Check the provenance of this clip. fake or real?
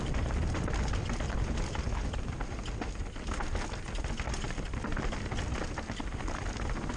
real